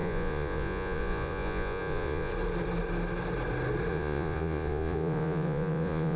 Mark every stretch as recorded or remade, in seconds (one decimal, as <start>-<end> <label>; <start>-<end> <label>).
0.0-2.3 remade; 2.3-3.9 recorded; 3.9-6.2 remade

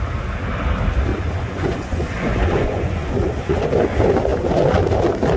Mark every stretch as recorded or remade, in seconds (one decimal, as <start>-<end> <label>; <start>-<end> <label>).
0.0-1.1 recorded; 1.1-3.6 remade; 3.6-5.4 recorded